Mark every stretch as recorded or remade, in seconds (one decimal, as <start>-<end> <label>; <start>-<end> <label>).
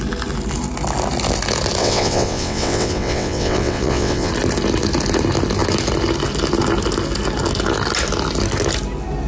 0.0-1.8 recorded; 1.8-4.3 remade; 4.3-9.3 recorded